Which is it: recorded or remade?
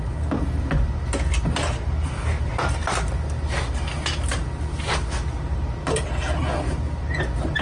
recorded